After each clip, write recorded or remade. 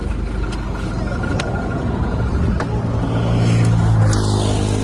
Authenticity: recorded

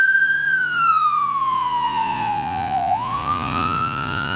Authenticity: remade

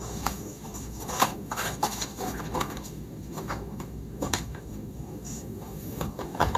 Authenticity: remade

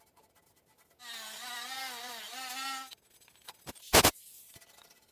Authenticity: recorded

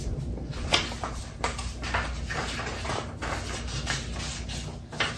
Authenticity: recorded